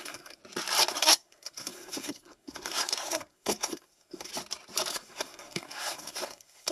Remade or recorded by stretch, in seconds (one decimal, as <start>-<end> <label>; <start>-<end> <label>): 0.0-0.4 remade; 0.4-0.9 recorded; 0.9-4.3 remade; 4.3-4.9 recorded; 4.9-6.7 remade

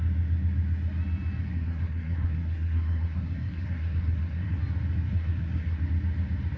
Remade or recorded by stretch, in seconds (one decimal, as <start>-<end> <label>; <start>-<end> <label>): 0.0-1.5 recorded; 1.5-4.6 remade; 4.6-5.1 recorded; 5.1-5.8 remade; 5.8-6.6 recorded